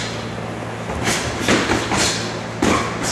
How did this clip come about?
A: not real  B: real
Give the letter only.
B